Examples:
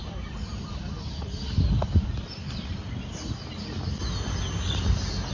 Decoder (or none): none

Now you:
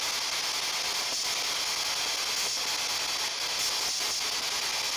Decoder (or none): none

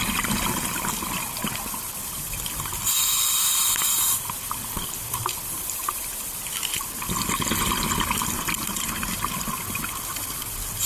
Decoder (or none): none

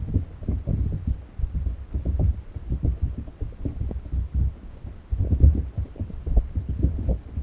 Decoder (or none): none